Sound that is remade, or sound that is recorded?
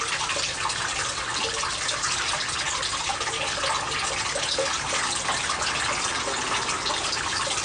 recorded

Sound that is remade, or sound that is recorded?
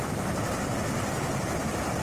remade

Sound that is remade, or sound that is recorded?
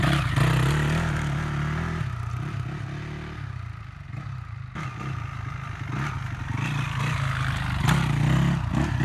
recorded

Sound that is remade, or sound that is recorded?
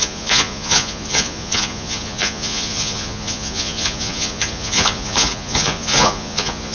remade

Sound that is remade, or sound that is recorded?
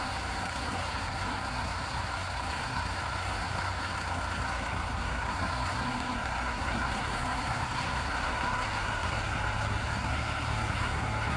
remade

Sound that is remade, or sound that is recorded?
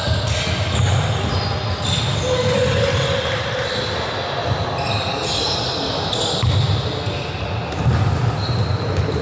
recorded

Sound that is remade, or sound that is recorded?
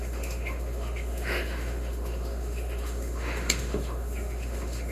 remade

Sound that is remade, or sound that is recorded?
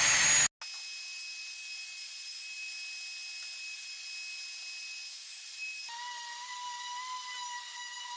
recorded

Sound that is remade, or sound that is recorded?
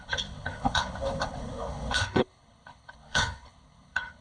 remade